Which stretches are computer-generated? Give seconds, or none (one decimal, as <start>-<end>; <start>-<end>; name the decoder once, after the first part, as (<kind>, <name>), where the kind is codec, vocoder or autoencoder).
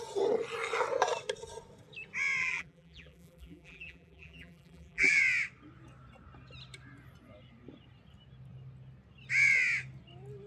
2.4-5.2 (vocoder, BigVGAN v2)